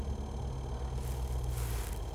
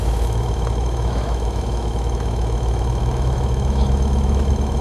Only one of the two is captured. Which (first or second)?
first